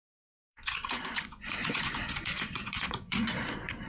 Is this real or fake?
fake